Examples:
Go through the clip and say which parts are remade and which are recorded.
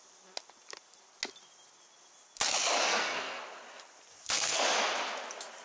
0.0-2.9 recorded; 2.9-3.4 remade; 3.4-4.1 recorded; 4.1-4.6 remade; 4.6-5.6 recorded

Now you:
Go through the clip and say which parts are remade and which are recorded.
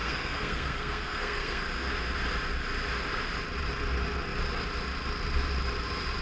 0.0-1.9 remade; 1.9-6.2 recorded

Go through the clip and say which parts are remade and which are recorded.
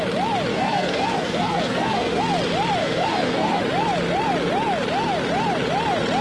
0.0-0.5 recorded; 0.5-2.2 remade; 2.2-2.8 recorded; 2.8-3.6 remade; 3.6-6.2 recorded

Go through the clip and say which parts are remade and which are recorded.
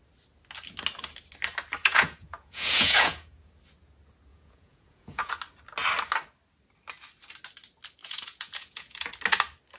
0.0-1.8 recorded; 1.8-3.5 remade; 3.5-4.3 recorded; 4.3-5.3 remade; 5.3-8.0 recorded; 8.0-9.1 remade; 9.1-9.8 recorded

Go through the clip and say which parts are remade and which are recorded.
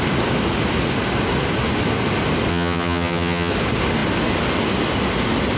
0.0-2.5 recorded; 2.5-3.5 remade; 3.5-5.6 recorded